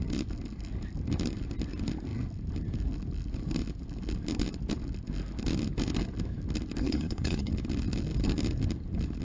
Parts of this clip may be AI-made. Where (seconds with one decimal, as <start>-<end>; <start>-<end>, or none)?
6.8-7.5